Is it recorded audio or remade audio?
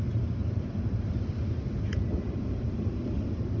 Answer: recorded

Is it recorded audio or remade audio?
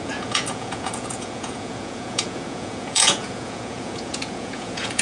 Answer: remade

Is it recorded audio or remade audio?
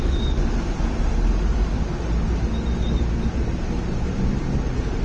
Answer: recorded